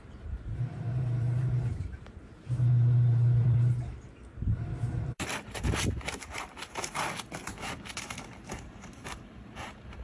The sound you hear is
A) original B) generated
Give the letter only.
B